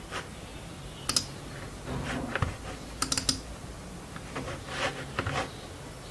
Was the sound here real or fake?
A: real